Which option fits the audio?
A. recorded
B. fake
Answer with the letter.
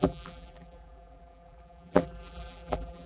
B